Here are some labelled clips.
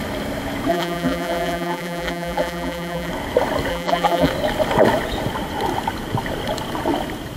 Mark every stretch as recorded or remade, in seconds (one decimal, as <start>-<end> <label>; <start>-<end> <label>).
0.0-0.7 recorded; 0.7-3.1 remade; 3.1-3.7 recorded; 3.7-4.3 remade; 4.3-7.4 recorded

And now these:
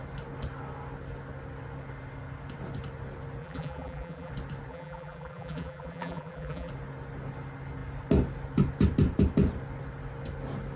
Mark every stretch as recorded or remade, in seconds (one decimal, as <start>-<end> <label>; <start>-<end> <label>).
0.0-3.4 recorded; 3.4-4.3 remade; 4.3-4.7 recorded; 4.7-6.7 remade; 6.7-10.8 recorded

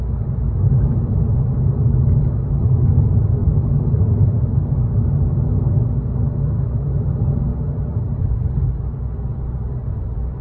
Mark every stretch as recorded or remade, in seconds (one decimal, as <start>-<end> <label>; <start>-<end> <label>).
0.0-3.4 recorded; 3.4-4.4 remade; 4.4-7.5 recorded; 7.5-8.2 remade; 8.2-10.4 recorded

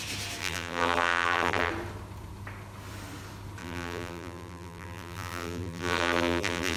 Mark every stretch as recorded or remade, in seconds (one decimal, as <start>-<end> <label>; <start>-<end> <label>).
0.0-0.4 recorded; 0.4-1.7 remade; 1.7-3.6 recorded; 3.6-6.8 remade

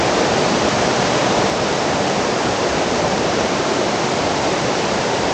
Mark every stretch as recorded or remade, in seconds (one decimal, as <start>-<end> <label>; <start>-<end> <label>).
0.0-1.2 recorded; 1.2-3.6 remade; 3.6-5.3 recorded